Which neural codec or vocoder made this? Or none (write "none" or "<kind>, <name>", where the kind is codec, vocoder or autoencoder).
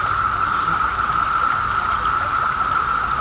none